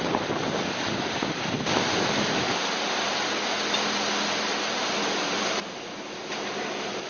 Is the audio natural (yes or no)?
yes